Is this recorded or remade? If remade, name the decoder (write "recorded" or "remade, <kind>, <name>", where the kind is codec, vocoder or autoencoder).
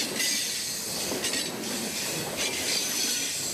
recorded